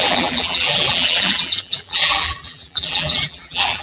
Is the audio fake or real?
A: fake